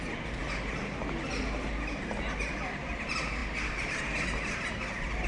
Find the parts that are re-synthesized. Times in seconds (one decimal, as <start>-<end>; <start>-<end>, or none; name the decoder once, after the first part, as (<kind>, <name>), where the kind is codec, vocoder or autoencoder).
none